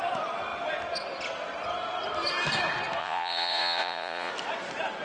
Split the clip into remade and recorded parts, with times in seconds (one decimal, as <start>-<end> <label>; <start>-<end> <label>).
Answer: 0.0-3.0 recorded; 3.0-4.3 remade; 4.3-5.0 recorded